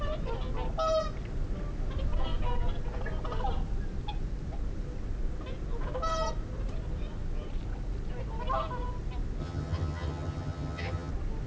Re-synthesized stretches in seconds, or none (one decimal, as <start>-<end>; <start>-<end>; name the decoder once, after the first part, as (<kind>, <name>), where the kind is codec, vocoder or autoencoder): 9.4-11.1 (vocoder, HiFi-GAN)